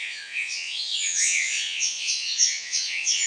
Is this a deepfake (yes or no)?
yes